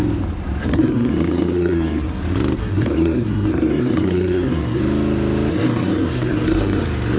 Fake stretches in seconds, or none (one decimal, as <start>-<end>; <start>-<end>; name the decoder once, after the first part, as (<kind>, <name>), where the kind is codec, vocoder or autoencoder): 0.6-2.2 (codec, SNAC); 2.6-4.8; 5.5-6.8